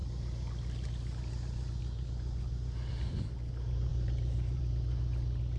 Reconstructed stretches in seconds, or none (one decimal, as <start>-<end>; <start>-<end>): 3.9-4.6